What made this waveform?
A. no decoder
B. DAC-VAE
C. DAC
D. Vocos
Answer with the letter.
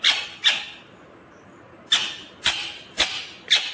A